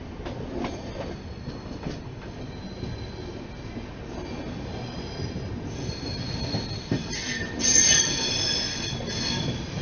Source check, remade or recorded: recorded